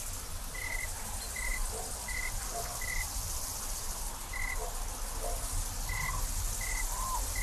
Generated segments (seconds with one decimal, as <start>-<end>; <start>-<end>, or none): 1.5-4.0